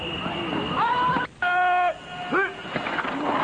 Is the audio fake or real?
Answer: real